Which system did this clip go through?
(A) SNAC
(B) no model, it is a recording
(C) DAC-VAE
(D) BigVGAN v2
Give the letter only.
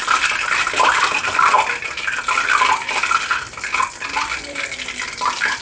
D